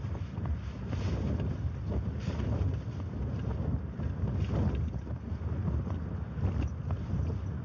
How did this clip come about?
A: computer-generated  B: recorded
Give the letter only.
B